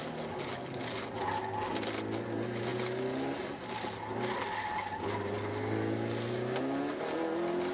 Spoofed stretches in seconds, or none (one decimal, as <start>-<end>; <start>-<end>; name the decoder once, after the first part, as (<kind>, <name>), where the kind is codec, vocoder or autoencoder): none